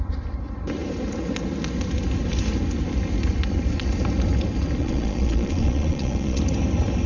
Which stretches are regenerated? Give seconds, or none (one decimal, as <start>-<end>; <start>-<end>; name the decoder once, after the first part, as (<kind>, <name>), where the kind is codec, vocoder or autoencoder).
4.8-6.4 (vocoder, Vocos)